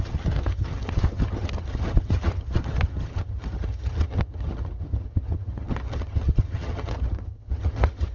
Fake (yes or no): yes